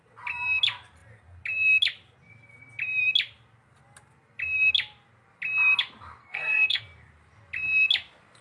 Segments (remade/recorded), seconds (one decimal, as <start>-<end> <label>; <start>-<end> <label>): 0.0-6.2 recorded; 6.2-6.8 remade; 6.8-8.4 recorded